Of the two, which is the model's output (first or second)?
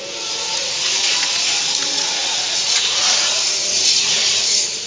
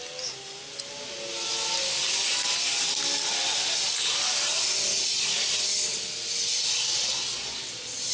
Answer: first